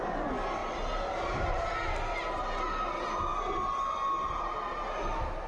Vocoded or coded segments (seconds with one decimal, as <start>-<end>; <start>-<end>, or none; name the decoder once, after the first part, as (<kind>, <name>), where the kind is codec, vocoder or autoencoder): none